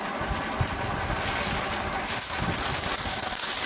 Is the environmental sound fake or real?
real